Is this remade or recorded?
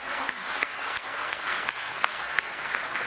remade